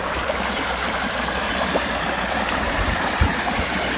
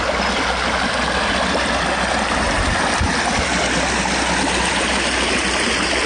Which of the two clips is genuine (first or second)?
second